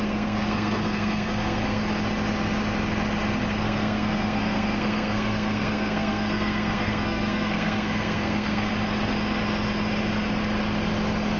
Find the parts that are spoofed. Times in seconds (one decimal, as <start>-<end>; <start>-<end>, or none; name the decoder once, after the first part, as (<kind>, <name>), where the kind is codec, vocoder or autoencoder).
0.0-1.8 (codec, SNAC); 3.5-8.7